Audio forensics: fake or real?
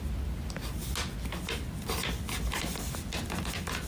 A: real